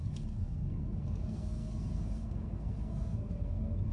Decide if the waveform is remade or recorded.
remade